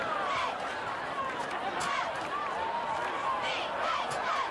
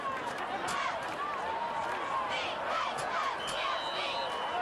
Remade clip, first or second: first